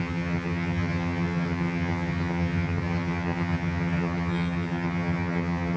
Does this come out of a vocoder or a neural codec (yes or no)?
yes